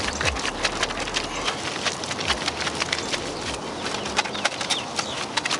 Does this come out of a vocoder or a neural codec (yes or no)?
no